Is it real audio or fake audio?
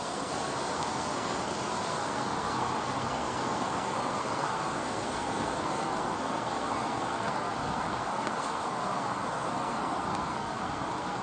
fake